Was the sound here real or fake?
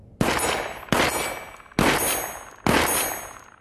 real